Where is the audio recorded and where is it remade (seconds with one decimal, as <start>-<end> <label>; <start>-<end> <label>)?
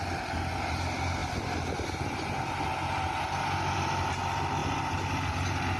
0.0-5.8 recorded